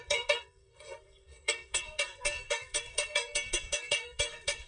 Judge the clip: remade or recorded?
remade